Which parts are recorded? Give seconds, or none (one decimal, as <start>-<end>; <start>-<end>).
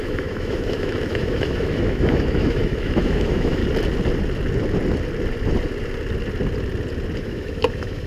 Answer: 3.6-7.2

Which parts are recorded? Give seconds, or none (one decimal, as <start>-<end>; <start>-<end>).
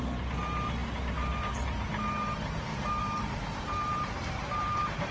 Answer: 0.0-2.7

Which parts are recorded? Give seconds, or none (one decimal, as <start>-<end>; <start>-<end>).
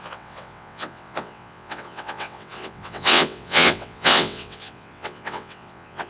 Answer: none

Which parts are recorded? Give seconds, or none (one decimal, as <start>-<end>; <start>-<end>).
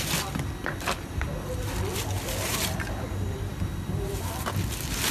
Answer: 0.0-2.5; 3.5-5.1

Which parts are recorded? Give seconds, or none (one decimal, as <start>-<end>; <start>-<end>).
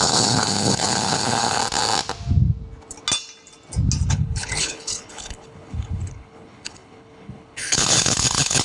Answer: 1.6-4.1